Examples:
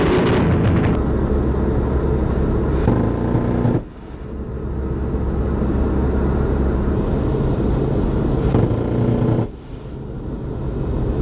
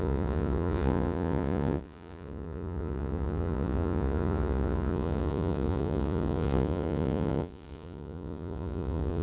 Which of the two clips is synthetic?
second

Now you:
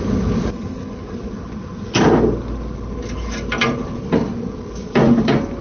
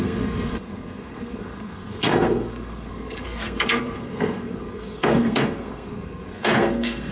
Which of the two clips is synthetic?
second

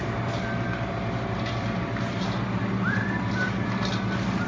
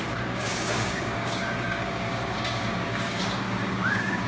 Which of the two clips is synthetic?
second